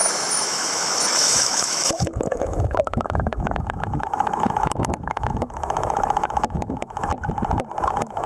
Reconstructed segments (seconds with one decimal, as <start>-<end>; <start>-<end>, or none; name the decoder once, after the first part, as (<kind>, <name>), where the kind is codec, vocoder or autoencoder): 0.0-7.1 (autoencoder, DAC-VAE); 7.8-8.3